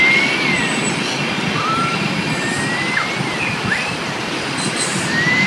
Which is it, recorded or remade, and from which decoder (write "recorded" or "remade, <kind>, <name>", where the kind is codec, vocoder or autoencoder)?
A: recorded